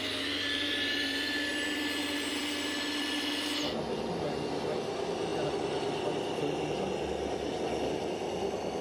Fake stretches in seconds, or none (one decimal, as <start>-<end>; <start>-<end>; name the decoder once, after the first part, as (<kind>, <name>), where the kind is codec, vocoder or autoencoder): none